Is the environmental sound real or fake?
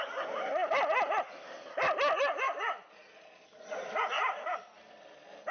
real